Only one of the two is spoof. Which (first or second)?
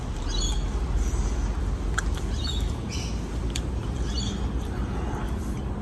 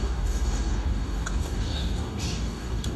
second